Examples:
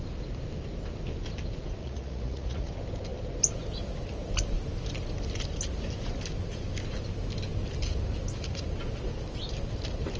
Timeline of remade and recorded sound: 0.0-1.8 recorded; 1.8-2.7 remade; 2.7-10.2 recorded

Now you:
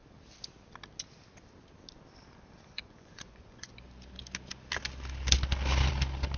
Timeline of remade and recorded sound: 0.0-2.7 recorded; 2.7-3.7 remade; 3.7-6.4 recorded

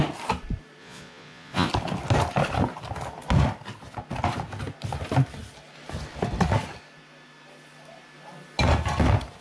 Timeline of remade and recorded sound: 0.0-0.8 recorded; 0.8-1.7 remade; 1.7-9.4 recorded

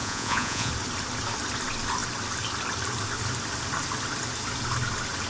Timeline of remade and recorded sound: 0.0-0.7 remade; 0.7-5.3 recorded

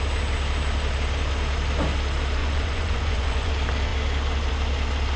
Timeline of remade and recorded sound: 0.0-2.4 recorded; 2.4-3.5 remade; 3.5-5.2 recorded

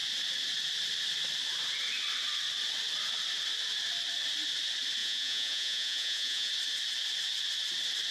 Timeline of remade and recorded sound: 0.0-5.0 recorded; 5.0-6.5 remade; 6.5-8.1 recorded